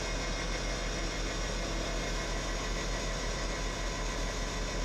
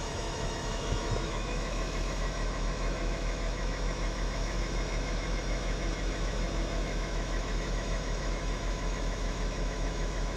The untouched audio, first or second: first